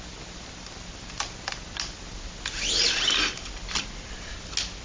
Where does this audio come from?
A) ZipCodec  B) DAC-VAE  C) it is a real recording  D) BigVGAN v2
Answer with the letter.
C